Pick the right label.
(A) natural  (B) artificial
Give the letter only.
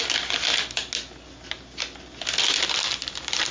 A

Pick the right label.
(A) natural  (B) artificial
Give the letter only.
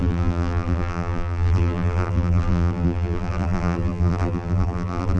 B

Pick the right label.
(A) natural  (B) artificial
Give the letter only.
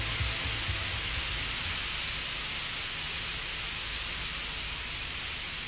A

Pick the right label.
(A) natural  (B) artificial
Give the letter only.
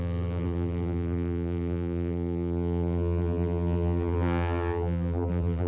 B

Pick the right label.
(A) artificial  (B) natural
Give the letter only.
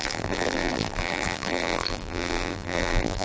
A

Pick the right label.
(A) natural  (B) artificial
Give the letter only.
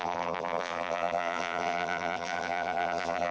B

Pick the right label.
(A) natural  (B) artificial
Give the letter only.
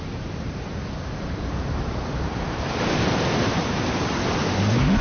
B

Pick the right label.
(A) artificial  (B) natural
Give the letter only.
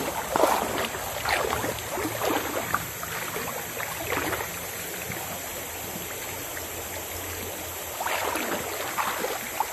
B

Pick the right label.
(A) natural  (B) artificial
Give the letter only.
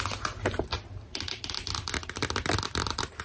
A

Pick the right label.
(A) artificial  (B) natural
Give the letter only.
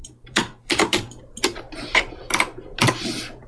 A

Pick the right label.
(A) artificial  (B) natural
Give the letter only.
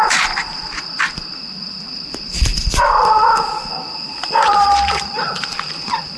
A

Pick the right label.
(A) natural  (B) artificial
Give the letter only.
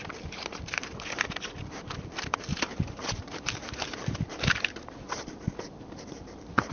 B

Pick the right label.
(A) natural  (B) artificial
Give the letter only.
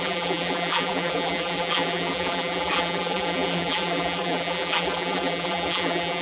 B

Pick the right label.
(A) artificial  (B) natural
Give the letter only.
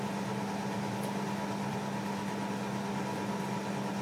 A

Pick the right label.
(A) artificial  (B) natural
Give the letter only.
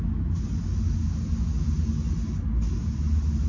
B